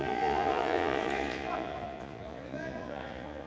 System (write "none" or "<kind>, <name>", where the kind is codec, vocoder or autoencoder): vocoder, Vocos